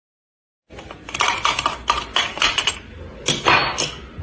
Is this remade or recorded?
recorded